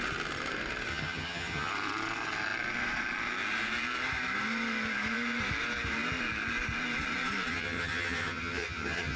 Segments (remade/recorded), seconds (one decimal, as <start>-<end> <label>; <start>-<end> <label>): 0.0-0.9 recorded; 0.9-1.7 remade; 1.7-7.5 recorded; 7.5-9.2 remade